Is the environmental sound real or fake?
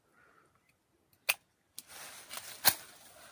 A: real